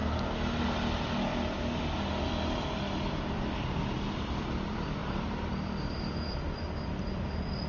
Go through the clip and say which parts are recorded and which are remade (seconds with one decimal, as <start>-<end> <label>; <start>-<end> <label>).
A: 0.0-3.3 recorded; 3.3-7.7 remade